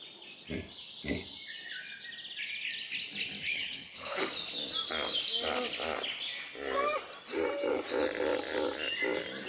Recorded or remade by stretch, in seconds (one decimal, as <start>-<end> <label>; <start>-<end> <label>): 0.0-3.5 recorded; 3.5-4.2 remade; 4.2-9.5 recorded